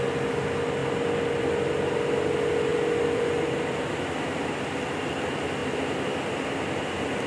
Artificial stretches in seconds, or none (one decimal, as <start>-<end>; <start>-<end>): 0.8-1.5; 2.7-5.1

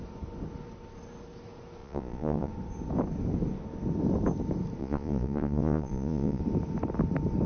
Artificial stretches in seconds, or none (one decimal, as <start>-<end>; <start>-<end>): 1.8-2.5; 4.8-6.4

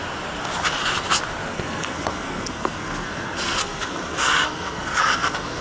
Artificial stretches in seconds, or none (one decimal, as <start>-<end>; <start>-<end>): 1.5-5.6

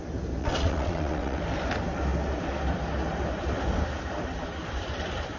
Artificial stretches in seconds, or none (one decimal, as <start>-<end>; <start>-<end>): 0.4-1.4

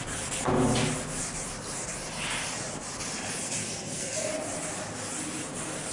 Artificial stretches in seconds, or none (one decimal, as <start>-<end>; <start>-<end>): 3.4-4.3

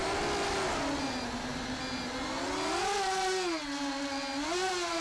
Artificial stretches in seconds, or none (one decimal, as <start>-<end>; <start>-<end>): none

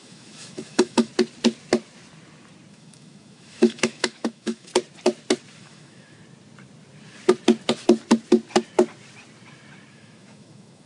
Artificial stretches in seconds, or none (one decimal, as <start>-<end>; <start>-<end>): 0.0-1.1; 2.7-4.7; 5.6-6.2; 9.9-10.9

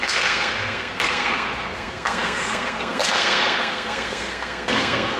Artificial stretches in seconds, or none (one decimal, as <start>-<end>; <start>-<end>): 0.0-5.2